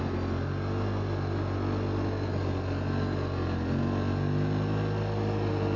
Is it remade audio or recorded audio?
recorded